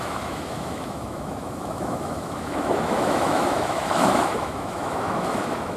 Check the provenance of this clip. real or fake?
fake